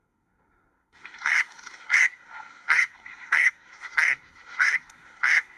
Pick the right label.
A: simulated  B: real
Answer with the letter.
A